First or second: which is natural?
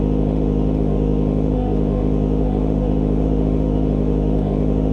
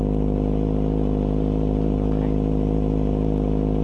second